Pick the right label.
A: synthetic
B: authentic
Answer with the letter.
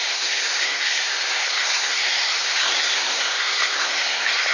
A